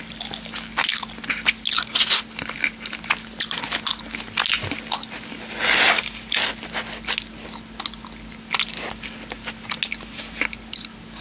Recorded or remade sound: recorded